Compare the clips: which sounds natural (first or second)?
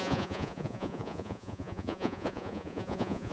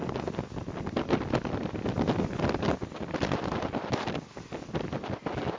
second